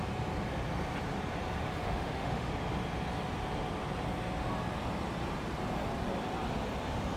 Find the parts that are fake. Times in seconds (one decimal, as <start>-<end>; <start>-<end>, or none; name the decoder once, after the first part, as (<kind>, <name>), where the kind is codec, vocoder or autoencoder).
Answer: 1.8-2.5 (autoencoder, DAC-VAE)